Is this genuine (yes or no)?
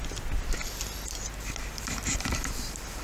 yes